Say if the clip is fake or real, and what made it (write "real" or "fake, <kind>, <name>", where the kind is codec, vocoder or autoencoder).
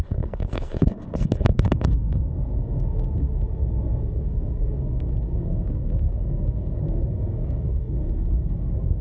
fake, codec, SNAC